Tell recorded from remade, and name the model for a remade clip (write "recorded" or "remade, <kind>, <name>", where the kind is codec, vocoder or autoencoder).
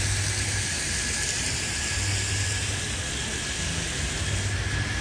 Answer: recorded